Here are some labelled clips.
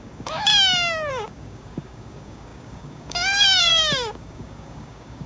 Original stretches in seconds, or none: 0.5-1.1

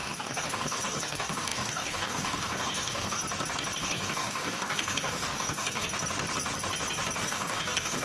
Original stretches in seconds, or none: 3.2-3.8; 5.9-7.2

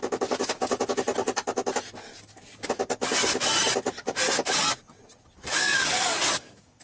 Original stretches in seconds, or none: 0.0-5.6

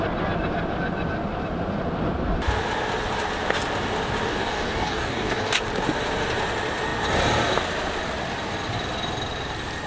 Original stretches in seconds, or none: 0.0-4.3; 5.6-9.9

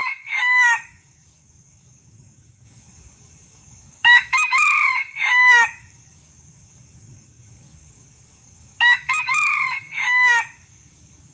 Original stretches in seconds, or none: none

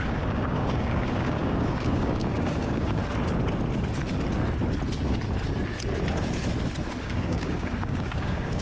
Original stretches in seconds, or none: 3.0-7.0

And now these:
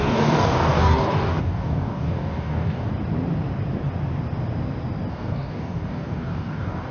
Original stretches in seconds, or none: 2.9-5.1

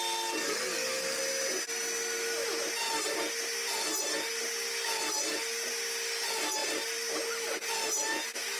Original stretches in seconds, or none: 0.0-0.4; 1.2-8.6